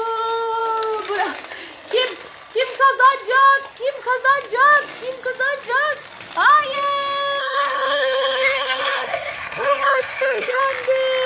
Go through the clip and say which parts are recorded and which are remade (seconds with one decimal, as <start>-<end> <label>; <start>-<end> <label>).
0.0-7.4 recorded; 7.4-10.6 remade; 10.6-11.3 recorded